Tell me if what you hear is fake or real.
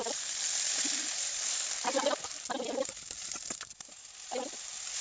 real